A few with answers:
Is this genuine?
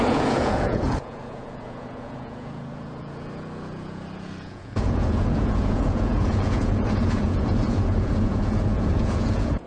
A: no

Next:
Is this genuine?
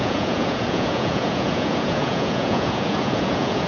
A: no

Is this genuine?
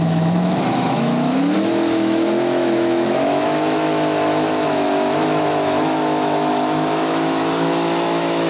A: no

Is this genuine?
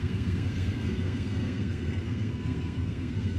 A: no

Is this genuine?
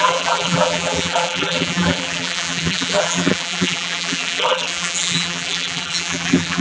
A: no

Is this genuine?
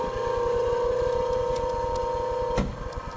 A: yes